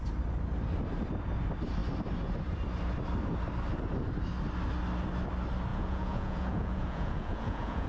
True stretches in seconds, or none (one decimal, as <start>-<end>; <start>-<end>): 0.0-5.7

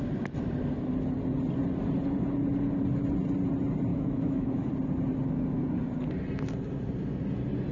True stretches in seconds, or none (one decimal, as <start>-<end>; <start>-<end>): 0.0-3.9; 4.7-7.7

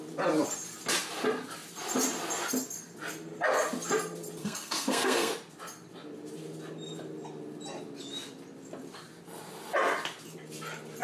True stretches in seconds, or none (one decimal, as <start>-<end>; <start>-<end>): 0.0-4.4; 5.3-11.0

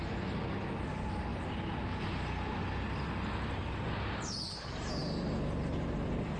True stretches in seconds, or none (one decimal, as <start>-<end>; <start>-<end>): 0.0-6.4